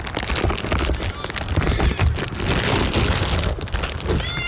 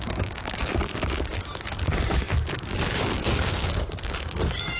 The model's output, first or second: second